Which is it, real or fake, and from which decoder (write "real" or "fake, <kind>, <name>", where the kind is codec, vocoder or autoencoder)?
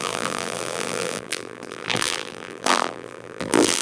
fake, vocoder, BigVGAN v2